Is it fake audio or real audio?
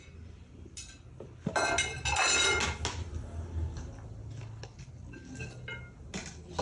real